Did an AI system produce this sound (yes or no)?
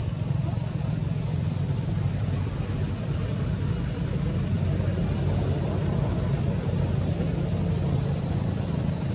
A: no